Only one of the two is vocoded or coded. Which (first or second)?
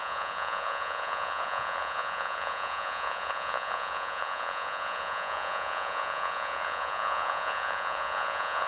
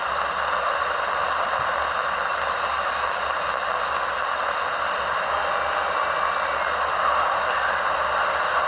first